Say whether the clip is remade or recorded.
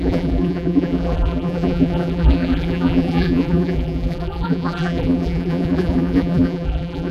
remade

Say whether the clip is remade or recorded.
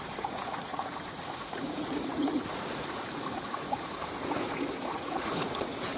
remade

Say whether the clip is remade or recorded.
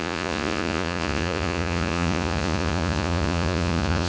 remade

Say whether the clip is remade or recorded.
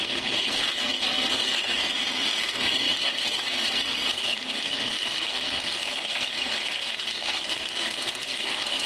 remade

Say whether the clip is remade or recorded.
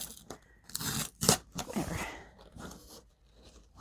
remade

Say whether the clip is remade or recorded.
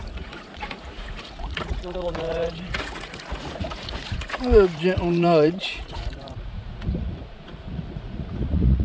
remade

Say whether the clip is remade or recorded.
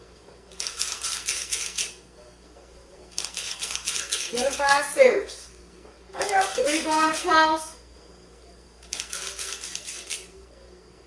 remade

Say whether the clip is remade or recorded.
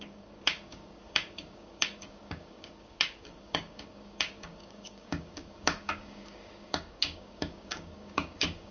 remade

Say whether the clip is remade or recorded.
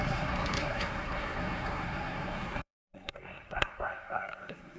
remade